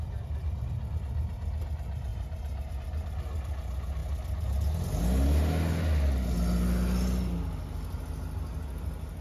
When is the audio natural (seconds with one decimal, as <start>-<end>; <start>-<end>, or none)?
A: 0.0-2.1; 2.7-9.2